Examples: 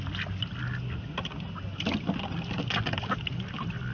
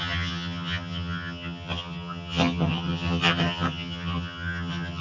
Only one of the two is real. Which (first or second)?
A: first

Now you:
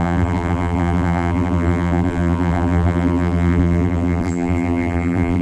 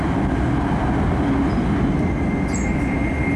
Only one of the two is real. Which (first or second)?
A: second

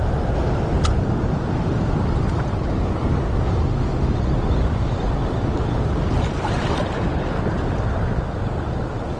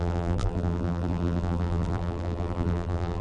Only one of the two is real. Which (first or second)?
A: first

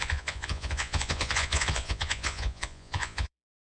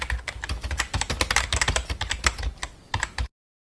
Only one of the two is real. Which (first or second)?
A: second